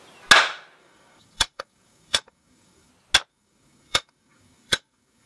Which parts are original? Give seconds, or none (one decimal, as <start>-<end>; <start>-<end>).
0.0-0.8; 2.9-3.3